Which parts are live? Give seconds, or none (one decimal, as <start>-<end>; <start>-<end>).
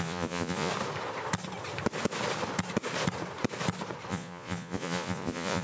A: 0.7-4.1